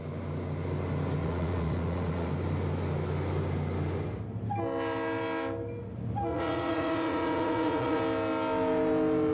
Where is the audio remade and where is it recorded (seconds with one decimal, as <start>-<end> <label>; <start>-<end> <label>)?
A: 0.0-1.2 recorded; 1.2-2.3 remade; 2.3-6.3 recorded; 6.3-8.0 remade; 8.0-9.3 recorded